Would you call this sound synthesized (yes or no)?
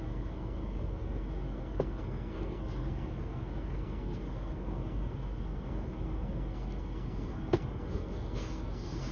yes